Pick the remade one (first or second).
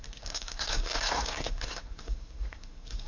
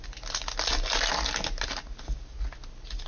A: first